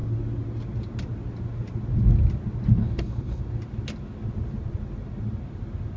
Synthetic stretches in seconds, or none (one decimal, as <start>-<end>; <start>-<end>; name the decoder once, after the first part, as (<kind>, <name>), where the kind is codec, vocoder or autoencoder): 2.8-3.4 (codec, HILCodec)